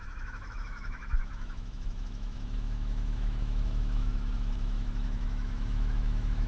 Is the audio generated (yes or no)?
yes